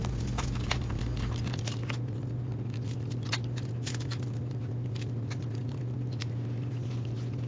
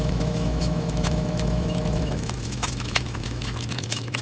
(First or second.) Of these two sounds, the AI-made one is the second